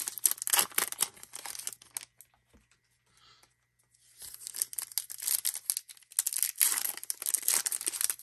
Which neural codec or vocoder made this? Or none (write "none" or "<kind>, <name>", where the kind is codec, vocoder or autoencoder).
none